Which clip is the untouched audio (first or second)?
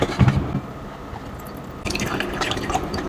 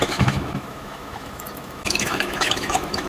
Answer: first